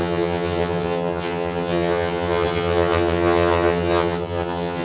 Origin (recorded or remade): remade